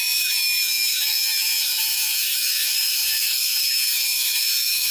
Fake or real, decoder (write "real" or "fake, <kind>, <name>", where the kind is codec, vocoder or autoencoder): fake, autoencoder, DAC-VAE